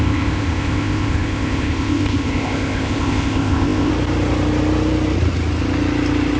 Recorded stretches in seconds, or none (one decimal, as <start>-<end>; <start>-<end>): 3.9-6.4